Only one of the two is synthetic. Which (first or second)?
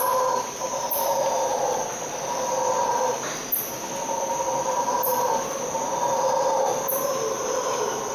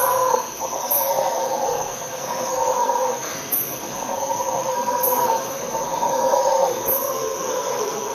second